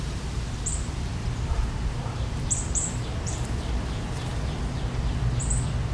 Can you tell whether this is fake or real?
fake